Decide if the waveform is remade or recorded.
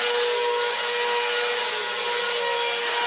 recorded